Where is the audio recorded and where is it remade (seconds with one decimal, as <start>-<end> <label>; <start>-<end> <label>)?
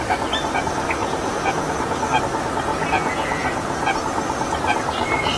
0.0-1.0 recorded; 1.0-2.1 remade; 2.1-2.7 recorded; 2.7-4.0 remade; 4.0-5.4 recorded